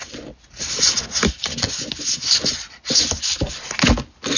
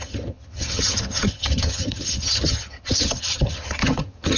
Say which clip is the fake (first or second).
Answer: second